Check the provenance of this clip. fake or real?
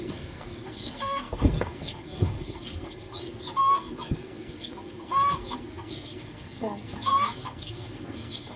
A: fake